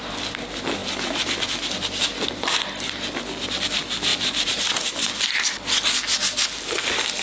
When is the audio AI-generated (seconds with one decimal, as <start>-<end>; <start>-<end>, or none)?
4.1-4.6